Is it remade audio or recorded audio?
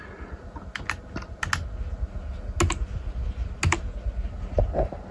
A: recorded